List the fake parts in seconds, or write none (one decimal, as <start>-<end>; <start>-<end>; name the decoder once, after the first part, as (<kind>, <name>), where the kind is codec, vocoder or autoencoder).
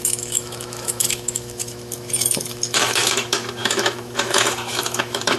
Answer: 0.0-5.4 (autoencoder, DAC-VAE)